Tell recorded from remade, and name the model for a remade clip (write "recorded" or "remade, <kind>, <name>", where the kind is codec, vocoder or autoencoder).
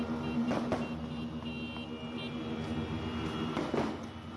recorded